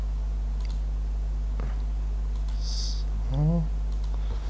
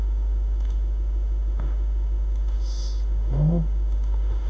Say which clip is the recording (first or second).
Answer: first